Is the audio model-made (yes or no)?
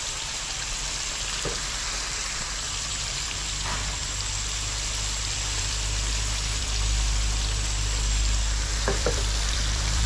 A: yes